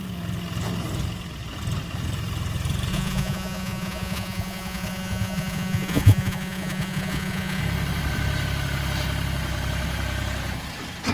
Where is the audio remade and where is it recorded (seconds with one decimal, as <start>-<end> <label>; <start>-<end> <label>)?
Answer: 0.0-2.9 recorded; 2.9-7.6 remade; 7.6-11.1 recorded